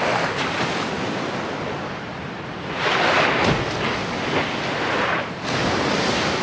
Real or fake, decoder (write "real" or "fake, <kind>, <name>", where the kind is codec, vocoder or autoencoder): real